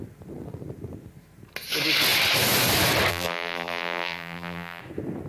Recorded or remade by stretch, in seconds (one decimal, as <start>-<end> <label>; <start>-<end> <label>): 0.0-3.1 recorded; 3.1-4.8 remade; 4.8-5.3 recorded

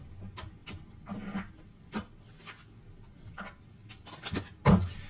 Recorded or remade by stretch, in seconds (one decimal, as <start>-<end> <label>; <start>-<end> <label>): 0.0-5.1 recorded

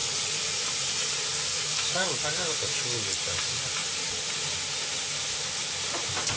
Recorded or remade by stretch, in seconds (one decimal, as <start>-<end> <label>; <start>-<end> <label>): 0.0-1.5 recorded; 1.5-2.2 remade; 2.2-6.4 recorded

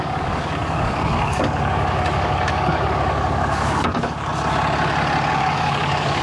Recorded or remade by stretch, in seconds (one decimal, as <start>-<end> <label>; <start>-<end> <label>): 0.0-4.3 remade; 4.3-5.3 recorded; 5.3-6.2 remade

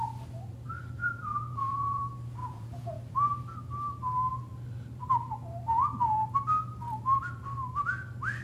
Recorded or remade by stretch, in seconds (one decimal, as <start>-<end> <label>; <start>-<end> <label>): 0.0-1.0 recorded; 1.0-2.0 remade; 2.0-2.4 recorded; 2.4-3.0 remade; 3.0-8.4 recorded

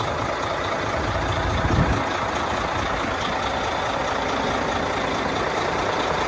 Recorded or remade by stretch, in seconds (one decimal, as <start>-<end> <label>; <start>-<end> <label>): 0.0-4.0 recorded; 4.0-5.8 remade; 5.8-6.3 recorded